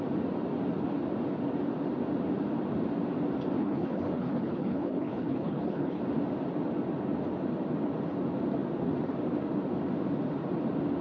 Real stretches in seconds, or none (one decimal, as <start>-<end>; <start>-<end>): 0.0-3.6; 6.0-11.0